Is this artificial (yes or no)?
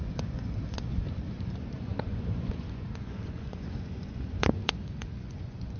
yes